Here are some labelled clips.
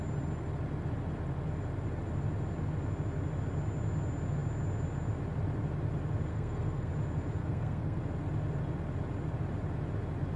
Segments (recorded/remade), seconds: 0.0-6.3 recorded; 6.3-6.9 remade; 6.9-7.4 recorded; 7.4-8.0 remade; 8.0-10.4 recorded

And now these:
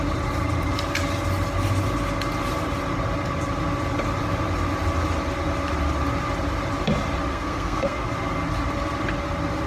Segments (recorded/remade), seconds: 0.0-7.3 recorded; 7.3-8.1 remade; 8.1-9.7 recorded

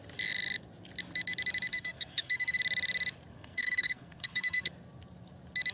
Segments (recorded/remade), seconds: 0.0-1.7 recorded; 1.7-2.6 remade; 2.6-3.3 recorded; 3.3-4.7 remade; 4.7-5.7 recorded

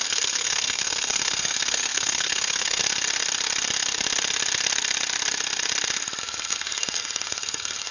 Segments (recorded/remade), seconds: 0.0-2.8 remade; 2.8-6.2 recorded; 6.2-7.9 remade

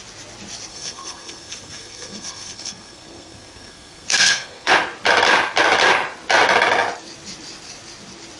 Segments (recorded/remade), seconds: 0.0-0.7 recorded; 0.7-4.7 remade; 4.7-8.4 recorded

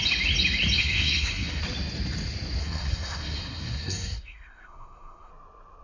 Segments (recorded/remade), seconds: 0.0-0.8 recorded; 0.8-1.6 remade; 1.6-2.6 recorded; 2.6-5.3 remade; 5.3-5.8 recorded

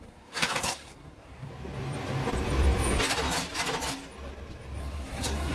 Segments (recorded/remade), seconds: 0.0-1.5 remade; 1.5-4.8 recorded; 4.8-5.5 remade